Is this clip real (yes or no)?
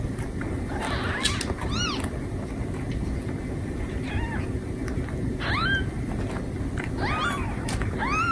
yes